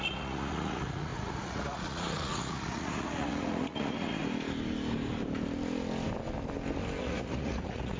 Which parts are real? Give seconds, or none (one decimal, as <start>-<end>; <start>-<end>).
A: 4.2-7.0